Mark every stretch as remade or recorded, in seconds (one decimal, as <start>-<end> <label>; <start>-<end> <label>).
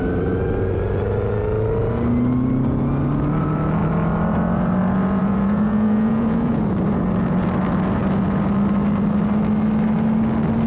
0.0-5.2 recorded; 5.2-6.6 remade; 6.6-10.7 recorded